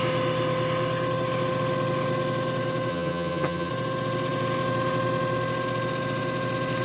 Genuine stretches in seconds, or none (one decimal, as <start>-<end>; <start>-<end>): 0.0-2.9; 3.7-6.8